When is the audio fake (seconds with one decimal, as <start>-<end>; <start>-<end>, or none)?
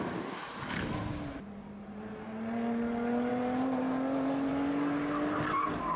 none